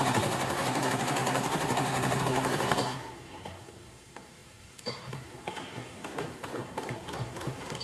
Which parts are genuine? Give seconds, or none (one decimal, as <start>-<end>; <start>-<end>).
none